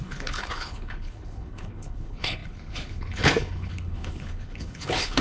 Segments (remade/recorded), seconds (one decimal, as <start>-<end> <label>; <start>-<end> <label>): 0.0-5.2 remade